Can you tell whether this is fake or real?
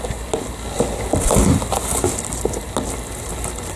real